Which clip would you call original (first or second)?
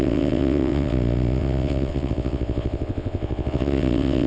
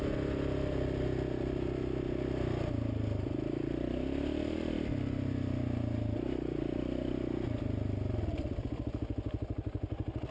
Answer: second